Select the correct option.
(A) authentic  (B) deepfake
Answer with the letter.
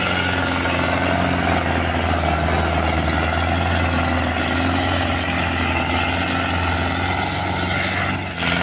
A